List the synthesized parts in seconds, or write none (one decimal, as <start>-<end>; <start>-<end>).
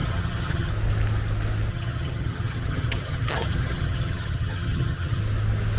0.0-0.7; 1.7-5.2